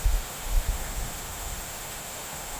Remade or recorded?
remade